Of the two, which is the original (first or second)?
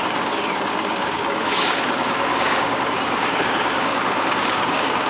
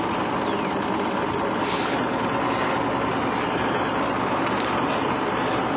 second